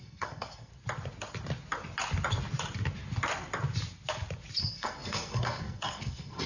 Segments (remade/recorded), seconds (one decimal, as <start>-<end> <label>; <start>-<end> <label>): 0.0-0.7 remade; 0.7-4.6 recorded; 4.6-6.5 remade